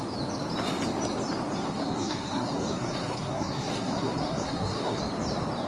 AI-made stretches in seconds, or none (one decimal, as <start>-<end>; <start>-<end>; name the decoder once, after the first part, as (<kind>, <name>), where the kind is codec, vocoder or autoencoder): 1.6-5.0 (codec, SNAC)